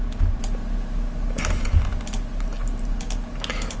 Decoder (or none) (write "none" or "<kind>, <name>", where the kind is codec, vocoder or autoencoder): none